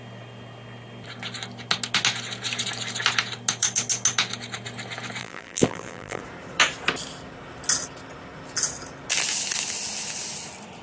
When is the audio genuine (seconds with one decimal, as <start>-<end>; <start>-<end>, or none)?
0.0-5.2; 6.2-10.8